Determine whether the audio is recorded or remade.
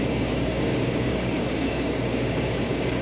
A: remade